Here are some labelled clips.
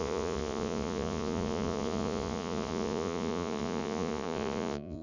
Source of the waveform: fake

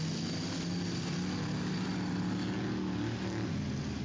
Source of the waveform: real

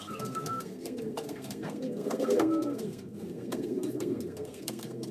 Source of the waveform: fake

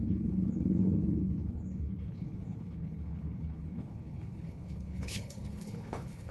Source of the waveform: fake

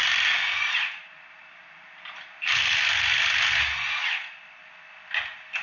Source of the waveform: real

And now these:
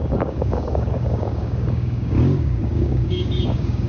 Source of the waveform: fake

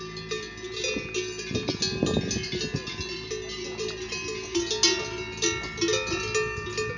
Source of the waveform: real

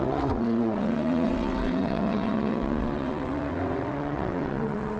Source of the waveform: fake